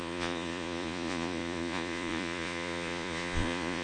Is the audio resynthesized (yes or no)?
yes